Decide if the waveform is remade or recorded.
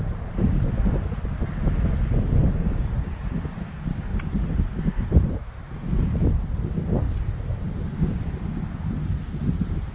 recorded